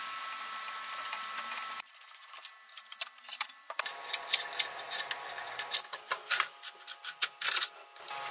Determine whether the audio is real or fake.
real